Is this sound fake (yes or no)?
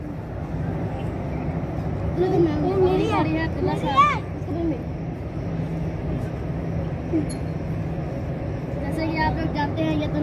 no